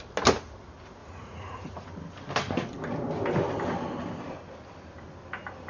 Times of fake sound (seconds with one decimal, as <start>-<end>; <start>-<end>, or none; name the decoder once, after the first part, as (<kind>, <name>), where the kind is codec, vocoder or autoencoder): 1.0-1.9 (vocoder, Vocos)